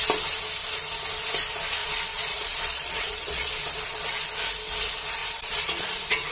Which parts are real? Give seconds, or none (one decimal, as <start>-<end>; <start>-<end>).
0.0-1.8; 3.5-5.2